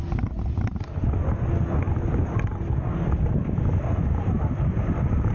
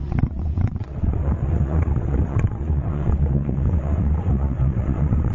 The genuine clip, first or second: first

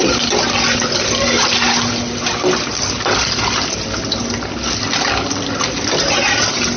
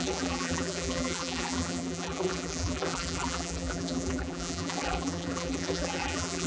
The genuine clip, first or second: first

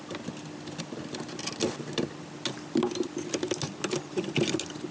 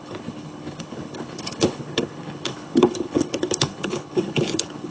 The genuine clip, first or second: first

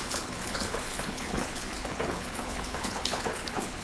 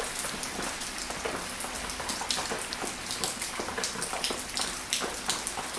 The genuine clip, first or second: second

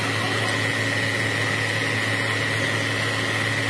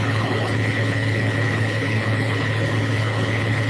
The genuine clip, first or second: first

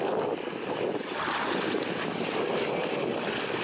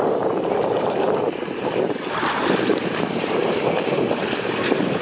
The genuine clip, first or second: first